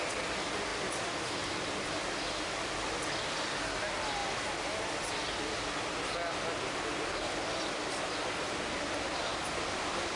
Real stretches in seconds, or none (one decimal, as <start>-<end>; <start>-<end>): 0.0-10.2